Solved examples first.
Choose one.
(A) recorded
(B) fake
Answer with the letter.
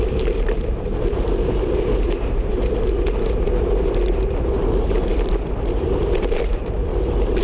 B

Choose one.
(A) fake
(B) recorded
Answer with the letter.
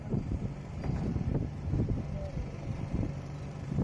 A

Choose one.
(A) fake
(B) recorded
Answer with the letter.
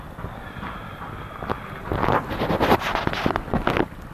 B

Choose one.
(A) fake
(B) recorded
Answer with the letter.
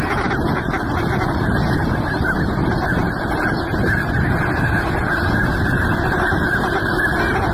B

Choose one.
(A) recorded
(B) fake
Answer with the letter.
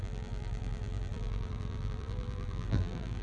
B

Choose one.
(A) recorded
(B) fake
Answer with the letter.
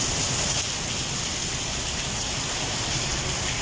A